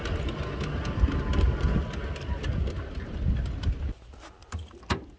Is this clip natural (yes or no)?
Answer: yes